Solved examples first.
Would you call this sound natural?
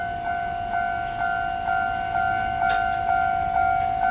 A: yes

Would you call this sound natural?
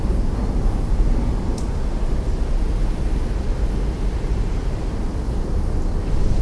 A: yes